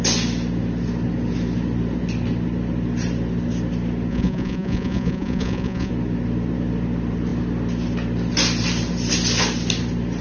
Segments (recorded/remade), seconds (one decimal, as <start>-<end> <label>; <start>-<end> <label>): 0.0-4.1 recorded; 4.1-5.9 remade; 5.9-10.2 recorded